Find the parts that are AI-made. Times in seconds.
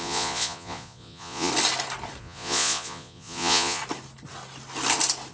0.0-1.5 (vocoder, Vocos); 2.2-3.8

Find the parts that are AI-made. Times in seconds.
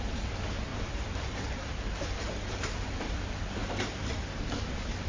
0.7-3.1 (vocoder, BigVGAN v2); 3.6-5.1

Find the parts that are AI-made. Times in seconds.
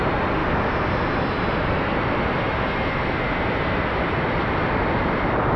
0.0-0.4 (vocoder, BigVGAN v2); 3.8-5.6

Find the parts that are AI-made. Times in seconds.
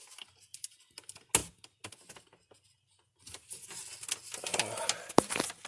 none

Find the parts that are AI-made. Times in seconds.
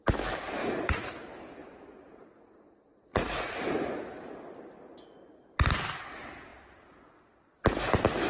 0.6-1.1 (vocoder, Vocos); 1.6-4.0